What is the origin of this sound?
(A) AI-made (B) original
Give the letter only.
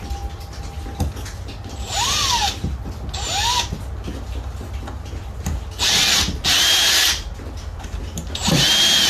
B